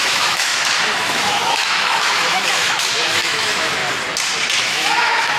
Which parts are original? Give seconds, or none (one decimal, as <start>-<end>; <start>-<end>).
0.5-1.0; 3.8-4.6